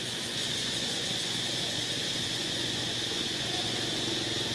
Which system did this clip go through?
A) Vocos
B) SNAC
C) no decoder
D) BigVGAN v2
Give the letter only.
A